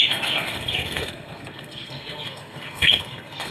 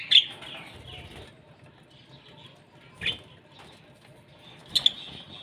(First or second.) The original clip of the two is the second